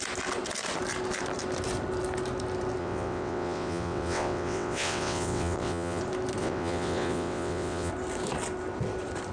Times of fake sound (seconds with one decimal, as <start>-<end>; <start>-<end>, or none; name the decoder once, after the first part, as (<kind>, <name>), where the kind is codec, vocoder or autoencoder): 2.8-6.0 (vocoder, WaveNeXt); 6.4-7.9